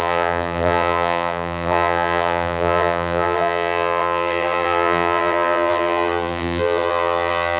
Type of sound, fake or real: fake